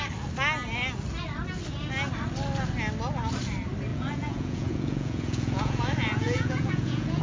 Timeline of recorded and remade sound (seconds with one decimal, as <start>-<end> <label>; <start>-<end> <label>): 0.0-3.9 recorded; 3.9-7.2 remade